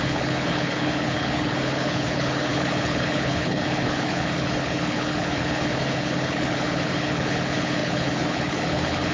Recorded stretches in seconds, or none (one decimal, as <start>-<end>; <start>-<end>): none